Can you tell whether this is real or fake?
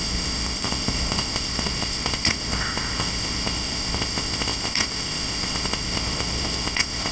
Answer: fake